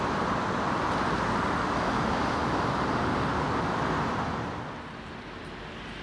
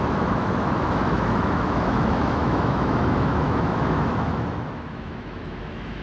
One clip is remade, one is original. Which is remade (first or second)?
second